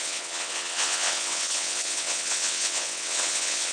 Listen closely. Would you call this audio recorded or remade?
remade